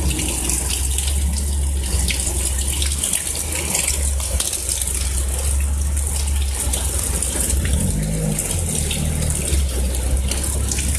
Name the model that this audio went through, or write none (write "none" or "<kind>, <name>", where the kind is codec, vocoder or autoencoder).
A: none